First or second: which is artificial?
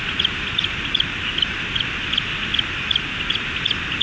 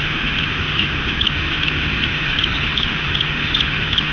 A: second